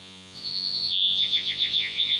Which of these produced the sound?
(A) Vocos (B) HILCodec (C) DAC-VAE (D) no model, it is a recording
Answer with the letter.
A